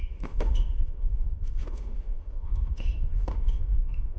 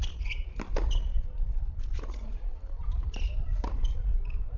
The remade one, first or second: first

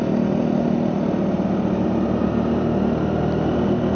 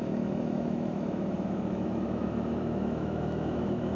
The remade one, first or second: second